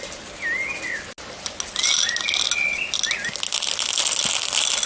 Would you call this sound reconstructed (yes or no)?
no